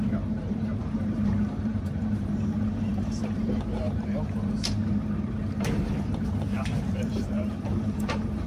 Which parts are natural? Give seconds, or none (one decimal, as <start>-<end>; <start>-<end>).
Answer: 4.8-5.4